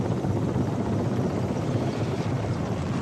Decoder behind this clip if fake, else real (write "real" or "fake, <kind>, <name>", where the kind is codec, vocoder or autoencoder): real